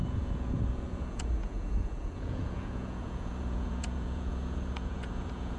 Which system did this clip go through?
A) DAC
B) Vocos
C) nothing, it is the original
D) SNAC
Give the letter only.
B